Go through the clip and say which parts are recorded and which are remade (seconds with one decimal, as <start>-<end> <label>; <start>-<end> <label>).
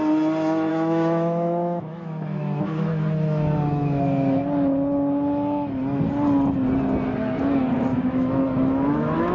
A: 0.0-0.7 recorded; 0.7-4.0 remade; 4.0-7.9 recorded; 7.9-9.3 remade